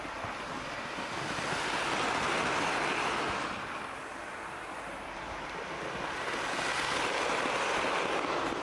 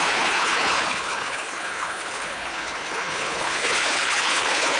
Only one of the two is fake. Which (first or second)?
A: second